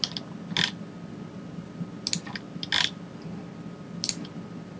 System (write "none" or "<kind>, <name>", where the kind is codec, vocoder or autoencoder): none